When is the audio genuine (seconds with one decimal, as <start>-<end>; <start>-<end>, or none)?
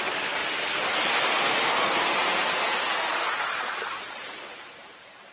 0.4-1.5